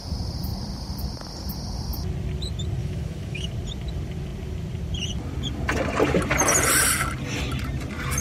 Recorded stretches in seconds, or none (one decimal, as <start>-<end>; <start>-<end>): 0.0-2.8; 3.5-8.2